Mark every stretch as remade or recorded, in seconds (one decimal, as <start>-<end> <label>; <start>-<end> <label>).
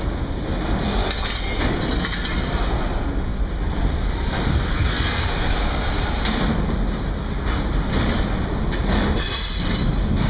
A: 0.0-10.3 recorded